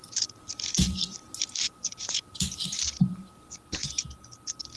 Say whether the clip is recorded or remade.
remade